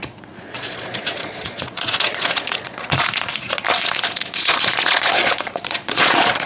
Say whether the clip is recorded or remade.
remade